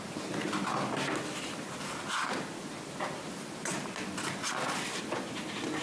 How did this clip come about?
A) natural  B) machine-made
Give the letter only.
A